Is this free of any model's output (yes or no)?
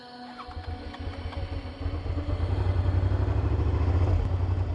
yes